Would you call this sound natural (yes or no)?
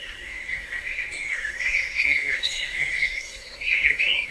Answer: no